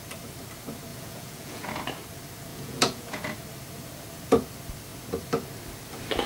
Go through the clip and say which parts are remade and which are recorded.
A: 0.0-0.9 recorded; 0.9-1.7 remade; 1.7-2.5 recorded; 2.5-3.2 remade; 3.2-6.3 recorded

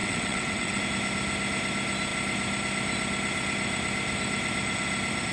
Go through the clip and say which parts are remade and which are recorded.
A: 0.0-0.8 remade; 0.8-5.3 recorded

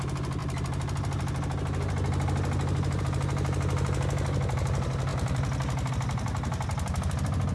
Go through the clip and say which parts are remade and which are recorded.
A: 0.0-7.5 recorded

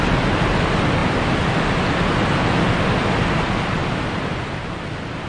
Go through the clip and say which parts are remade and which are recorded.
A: 0.0-5.3 recorded

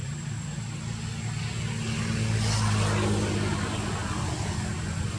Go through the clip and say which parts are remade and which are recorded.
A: 0.0-0.8 remade; 0.8-5.2 recorded

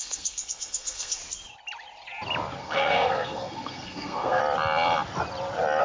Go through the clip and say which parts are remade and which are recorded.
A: 0.0-1.2 remade; 1.2-2.6 recorded; 2.6-4.4 remade; 4.4-5.8 recorded

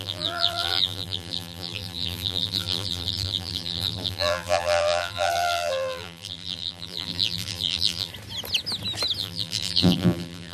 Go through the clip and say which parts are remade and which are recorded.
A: 0.0-8.1 remade; 8.1-9.2 recorded; 9.2-10.5 remade

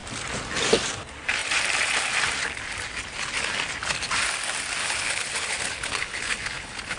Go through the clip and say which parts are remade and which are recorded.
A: 0.0-4.8 recorded; 4.8-7.0 remade